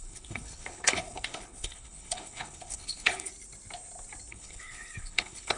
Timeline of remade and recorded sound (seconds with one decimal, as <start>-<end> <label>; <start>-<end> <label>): 0.0-3.3 remade; 3.3-4.3 recorded; 4.3-5.6 remade